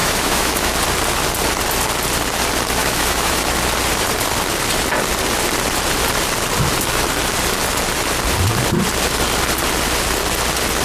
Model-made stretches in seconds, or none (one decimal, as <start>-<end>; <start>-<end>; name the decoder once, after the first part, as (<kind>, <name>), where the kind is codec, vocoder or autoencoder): 0.0-0.7 (autoencoder, DAC-VAE); 2.8-3.4